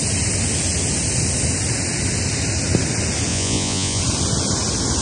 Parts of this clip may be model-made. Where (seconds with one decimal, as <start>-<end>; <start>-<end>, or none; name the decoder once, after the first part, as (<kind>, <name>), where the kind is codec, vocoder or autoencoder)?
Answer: 3.3-4.0 (vocoder, Vocos)